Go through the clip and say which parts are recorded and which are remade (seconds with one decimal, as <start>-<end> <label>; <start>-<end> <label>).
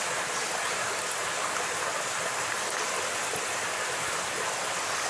0.0-5.1 recorded